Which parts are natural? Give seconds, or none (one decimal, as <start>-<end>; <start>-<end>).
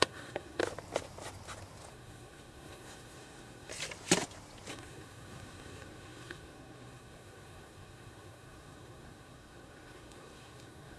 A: 0.6-1.9; 3.7-4.7